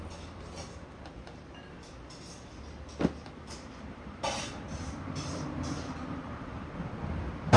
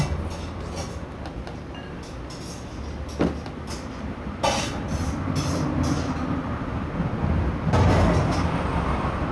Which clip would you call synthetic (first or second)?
first